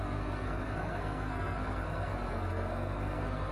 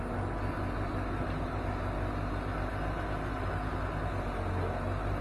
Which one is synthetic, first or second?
first